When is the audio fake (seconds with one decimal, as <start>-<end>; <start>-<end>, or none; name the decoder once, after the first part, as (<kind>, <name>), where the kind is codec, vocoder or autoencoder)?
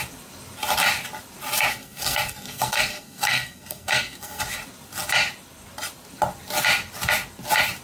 1.7-4.4 (codec, SNAC)